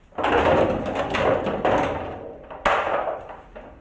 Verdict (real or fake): real